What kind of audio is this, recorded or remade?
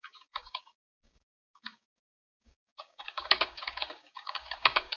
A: remade